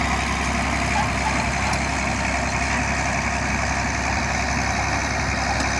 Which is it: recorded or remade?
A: recorded